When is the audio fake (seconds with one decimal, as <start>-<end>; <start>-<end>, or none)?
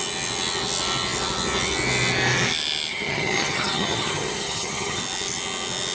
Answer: 2.9-5.0